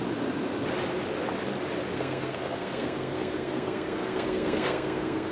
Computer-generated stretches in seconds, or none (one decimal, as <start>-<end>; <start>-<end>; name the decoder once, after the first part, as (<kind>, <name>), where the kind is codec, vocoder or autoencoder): 1.9-5.3 (codec, SNAC)